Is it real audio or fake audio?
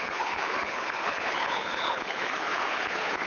fake